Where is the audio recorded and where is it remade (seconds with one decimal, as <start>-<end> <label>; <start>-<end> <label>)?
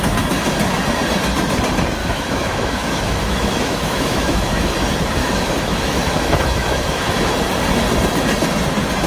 0.0-2.0 recorded; 2.0-4.7 remade; 4.7-5.2 recorded; 5.2-7.3 remade; 7.3-9.1 recorded